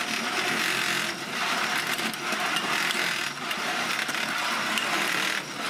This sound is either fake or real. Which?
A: real